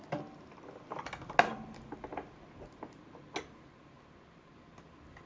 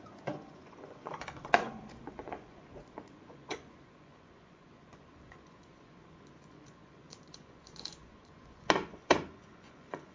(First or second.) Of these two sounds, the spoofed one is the second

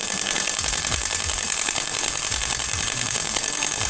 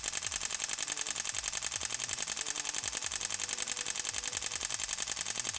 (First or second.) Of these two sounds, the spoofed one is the first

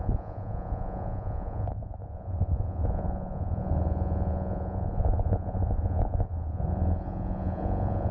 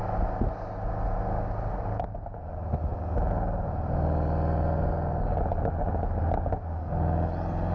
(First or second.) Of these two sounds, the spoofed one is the first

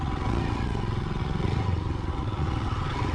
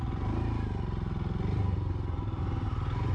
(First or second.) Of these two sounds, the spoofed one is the first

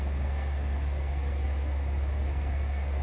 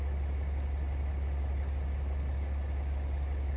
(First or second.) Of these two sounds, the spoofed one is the first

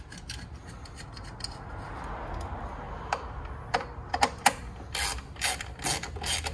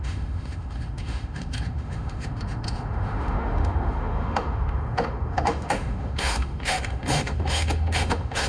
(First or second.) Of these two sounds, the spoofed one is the second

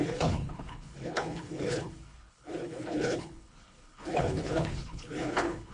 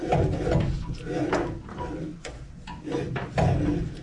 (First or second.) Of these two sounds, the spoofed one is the first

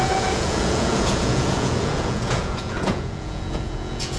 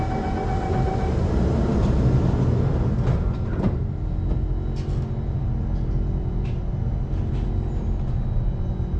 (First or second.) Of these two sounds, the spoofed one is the first